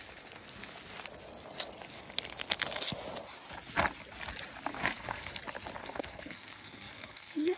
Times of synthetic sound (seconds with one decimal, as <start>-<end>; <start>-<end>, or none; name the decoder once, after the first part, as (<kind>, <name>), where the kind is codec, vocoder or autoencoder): 4.7-5.3 (codec, SNAC); 5.8-7.6

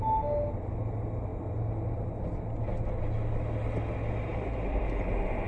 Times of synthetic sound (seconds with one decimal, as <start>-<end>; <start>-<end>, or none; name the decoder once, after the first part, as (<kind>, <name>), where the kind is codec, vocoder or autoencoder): 4.3-4.8 (vocoder, BigVGAN v2)

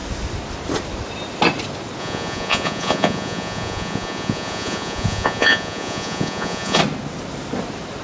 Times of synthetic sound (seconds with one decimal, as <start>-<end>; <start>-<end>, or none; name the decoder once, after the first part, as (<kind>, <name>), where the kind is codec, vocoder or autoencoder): 2.0-6.8 (vocoder, Vocos)